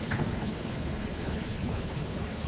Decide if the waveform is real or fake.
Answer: fake